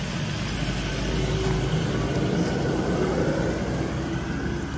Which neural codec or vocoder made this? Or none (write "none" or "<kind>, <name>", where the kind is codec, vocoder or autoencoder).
none